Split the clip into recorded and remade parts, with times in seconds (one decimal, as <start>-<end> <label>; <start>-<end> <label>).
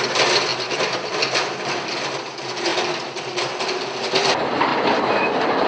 0.0-0.5 recorded; 0.5-1.3 remade; 1.3-2.7 recorded; 2.7-3.6 remade; 3.6-4.7 recorded; 4.7-5.7 remade